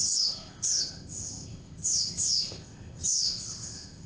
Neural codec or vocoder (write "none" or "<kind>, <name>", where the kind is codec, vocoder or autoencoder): codec, ZipCodec